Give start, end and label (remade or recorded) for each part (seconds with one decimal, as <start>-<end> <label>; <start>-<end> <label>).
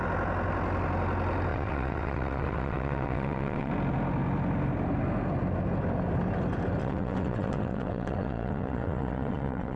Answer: 0.0-1.5 recorded; 1.5-3.7 remade; 3.7-6.8 recorded; 6.8-9.8 remade